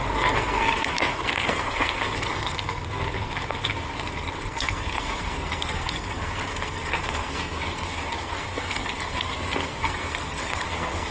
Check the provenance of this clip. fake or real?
fake